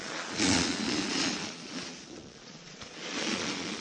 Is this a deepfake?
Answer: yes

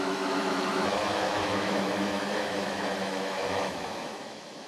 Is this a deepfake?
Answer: yes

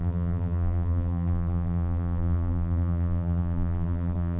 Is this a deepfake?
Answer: yes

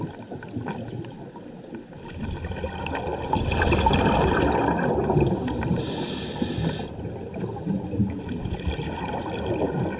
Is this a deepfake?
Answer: no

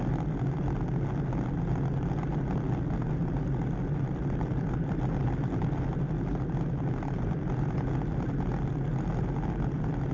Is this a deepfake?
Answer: no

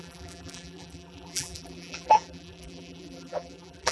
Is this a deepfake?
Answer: yes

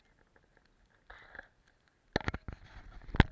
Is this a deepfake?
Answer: no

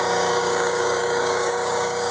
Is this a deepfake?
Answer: yes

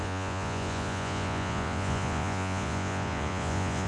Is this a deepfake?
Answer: yes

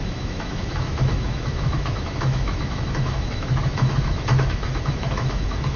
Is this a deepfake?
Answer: yes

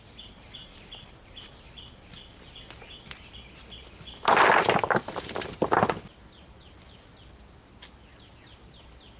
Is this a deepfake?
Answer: no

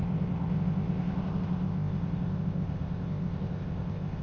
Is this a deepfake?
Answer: yes